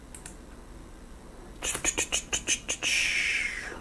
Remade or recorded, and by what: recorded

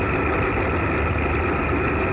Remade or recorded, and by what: recorded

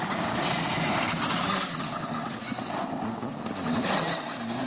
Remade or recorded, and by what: recorded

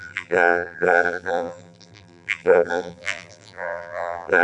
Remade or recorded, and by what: remade, vocoder, BigVGAN v2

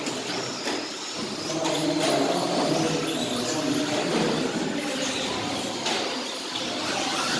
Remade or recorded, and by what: recorded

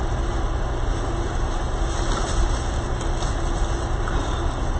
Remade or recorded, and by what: recorded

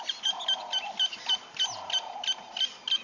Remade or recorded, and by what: recorded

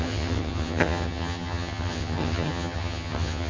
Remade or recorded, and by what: remade, vocoder, HiFi-GAN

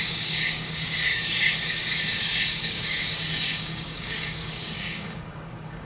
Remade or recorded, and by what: remade, codec, DAC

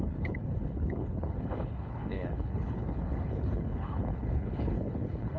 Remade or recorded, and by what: remade, codec, HILCodec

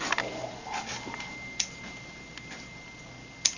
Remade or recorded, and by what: recorded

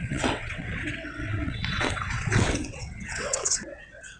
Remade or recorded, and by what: remade, vocoder, WaveNeXt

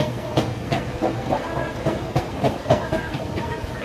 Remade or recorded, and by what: remade, codec, SNAC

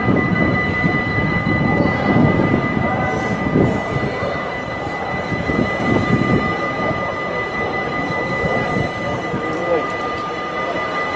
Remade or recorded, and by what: remade, vocoder, BigVGAN v2